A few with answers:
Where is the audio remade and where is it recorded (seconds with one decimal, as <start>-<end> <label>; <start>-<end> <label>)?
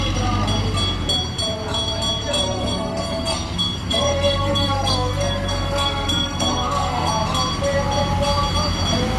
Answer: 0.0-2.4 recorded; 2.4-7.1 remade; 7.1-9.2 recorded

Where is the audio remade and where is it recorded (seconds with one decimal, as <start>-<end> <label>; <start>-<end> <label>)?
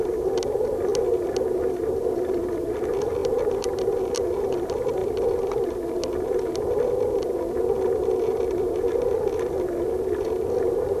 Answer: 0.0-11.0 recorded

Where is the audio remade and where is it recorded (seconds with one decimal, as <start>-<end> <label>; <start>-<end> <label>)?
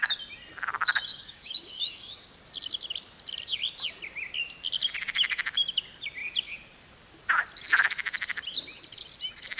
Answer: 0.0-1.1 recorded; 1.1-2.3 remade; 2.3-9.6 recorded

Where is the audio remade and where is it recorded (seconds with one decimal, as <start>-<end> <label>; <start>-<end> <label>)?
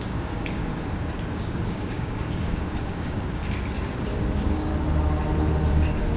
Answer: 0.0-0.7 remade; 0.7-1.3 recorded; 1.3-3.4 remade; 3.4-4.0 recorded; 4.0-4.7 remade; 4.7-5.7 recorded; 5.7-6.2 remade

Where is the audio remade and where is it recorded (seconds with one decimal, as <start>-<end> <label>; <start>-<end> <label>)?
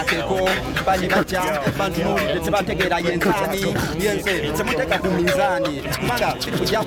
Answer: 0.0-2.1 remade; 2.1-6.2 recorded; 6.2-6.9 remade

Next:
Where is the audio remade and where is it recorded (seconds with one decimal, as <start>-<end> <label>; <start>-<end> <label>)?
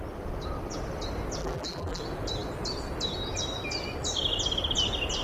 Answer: 0.0-1.4 recorded; 1.4-2.0 remade; 2.0-5.2 recorded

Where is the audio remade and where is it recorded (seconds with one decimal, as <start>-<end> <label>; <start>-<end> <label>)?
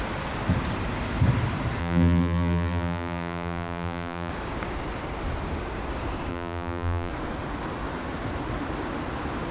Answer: 0.0-1.8 recorded; 1.8-4.3 remade; 4.3-6.3 recorded; 6.3-7.1 remade; 7.1-9.5 recorded